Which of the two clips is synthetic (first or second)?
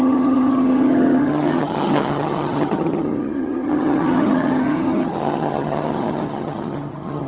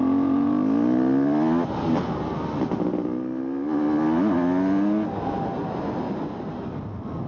first